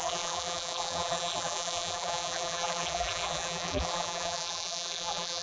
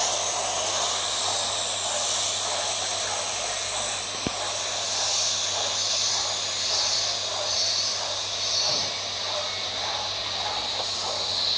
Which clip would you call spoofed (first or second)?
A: first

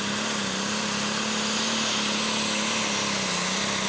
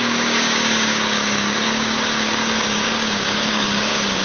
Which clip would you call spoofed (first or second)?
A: second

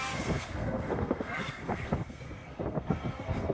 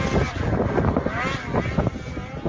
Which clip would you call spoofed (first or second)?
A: first